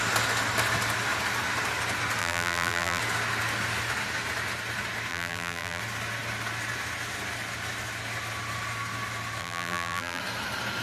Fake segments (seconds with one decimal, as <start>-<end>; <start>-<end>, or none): 2.2-3.0; 5.1-5.8; 9.4-10.2